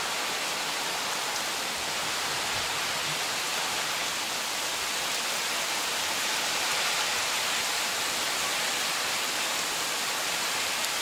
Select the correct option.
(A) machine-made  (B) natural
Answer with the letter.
B